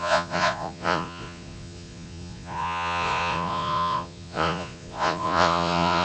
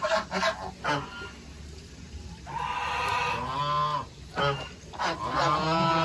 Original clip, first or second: second